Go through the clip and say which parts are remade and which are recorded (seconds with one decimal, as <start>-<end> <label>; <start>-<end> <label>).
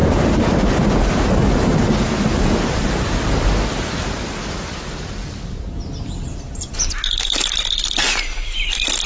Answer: 0.0-9.1 recorded